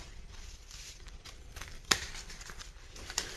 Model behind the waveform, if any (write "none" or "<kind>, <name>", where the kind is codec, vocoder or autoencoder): vocoder, BigVGAN v2